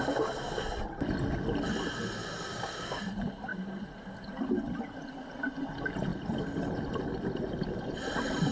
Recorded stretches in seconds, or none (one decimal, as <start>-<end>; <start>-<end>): 0.0-2.5; 3.0-8.5